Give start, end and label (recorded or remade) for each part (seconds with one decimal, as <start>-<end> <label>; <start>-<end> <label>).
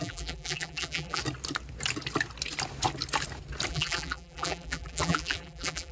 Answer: 0.0-1.2 remade; 1.2-3.7 recorded; 3.7-5.9 remade